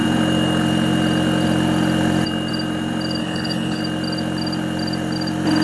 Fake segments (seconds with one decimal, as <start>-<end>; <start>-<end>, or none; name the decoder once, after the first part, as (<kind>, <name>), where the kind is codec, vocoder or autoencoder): 3.2-3.8 (codec, HILCodec)